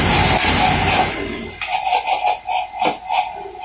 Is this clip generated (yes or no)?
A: no